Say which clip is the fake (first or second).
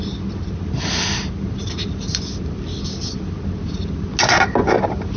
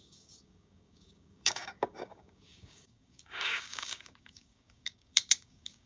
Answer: second